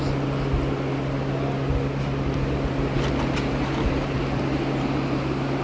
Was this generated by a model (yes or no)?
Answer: no